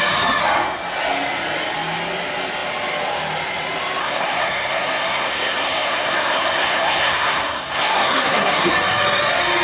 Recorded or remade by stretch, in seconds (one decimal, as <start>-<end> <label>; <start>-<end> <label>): 0.0-4.0 recorded; 4.0-8.7 remade; 8.7-9.6 recorded

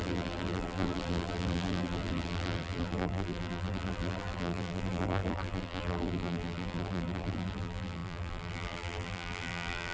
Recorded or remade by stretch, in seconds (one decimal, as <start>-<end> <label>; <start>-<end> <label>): 0.0-9.9 remade